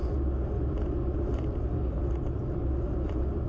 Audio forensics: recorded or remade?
recorded